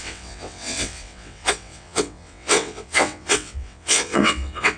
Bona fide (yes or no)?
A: no